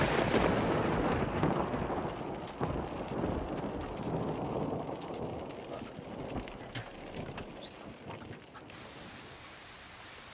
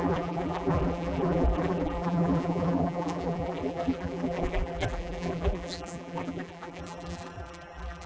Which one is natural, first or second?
first